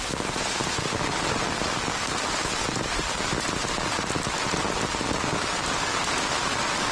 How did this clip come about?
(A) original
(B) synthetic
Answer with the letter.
A